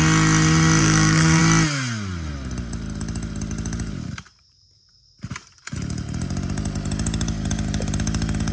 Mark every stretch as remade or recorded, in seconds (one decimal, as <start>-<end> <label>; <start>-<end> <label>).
0.0-0.8 recorded; 0.8-1.4 remade; 1.4-8.5 recorded